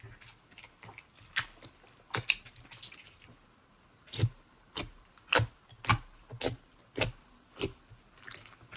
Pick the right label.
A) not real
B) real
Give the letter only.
B